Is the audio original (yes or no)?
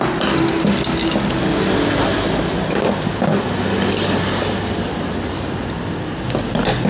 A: yes